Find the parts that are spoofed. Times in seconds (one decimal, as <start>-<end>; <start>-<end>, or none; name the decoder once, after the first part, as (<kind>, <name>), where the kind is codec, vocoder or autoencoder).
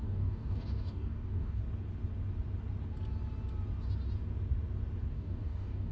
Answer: 0.0-1.6 (codec, DAC); 5.1-5.9